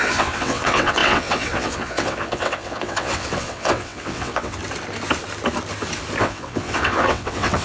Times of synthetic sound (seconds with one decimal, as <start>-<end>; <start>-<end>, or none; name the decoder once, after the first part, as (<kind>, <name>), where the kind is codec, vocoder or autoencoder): 0.0-4.6 (vocoder, WaveNeXt); 6.2-7.6